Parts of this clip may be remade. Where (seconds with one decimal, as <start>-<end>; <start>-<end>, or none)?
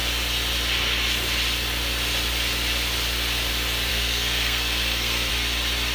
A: 3.9-5.3